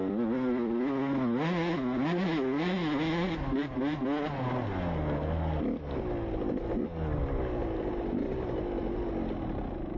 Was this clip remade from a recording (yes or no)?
no